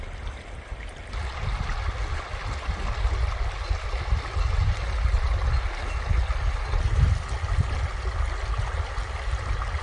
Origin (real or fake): real